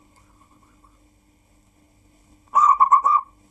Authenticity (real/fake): fake